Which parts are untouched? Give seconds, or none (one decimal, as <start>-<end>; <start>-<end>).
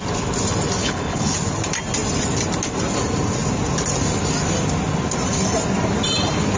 0.0-0.8; 1.3-6.6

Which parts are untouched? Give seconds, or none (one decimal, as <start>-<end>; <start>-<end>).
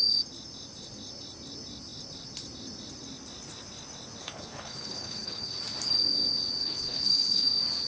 0.0-4.2; 5.5-6.6; 7.5-7.9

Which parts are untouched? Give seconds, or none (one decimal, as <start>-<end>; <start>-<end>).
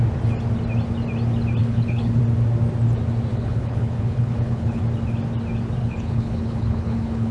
0.0-1.6; 2.2-3.3; 4.8-5.8